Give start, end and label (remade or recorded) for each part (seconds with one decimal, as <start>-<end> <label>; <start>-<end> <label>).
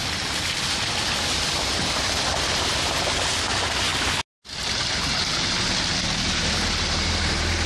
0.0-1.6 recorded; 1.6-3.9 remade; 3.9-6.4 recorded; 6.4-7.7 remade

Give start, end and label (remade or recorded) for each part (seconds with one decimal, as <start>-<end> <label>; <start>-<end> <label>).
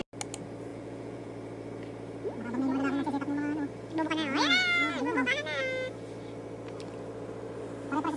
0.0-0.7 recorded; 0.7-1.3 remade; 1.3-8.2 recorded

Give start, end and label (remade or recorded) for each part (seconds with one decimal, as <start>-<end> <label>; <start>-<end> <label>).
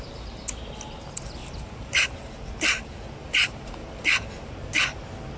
0.0-1.4 recorded; 1.4-2.1 remade; 2.1-3.2 recorded; 3.2-4.3 remade; 4.3-5.4 recorded